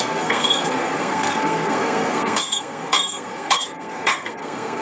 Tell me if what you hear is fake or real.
fake